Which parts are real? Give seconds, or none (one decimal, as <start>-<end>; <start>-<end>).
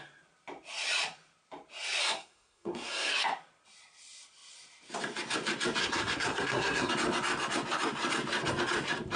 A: 0.0-2.0; 3.1-5.8; 6.9-9.2